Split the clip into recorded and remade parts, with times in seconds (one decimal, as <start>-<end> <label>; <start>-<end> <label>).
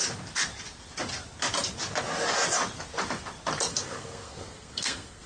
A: 0.0-3.7 recorded; 3.7-5.3 remade